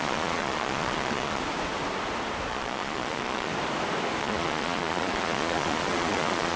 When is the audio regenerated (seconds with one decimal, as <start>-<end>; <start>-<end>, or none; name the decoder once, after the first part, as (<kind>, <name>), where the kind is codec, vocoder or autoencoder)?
0.0-1.4 (vocoder, Vocos); 2.5-3.5; 4.2-6.6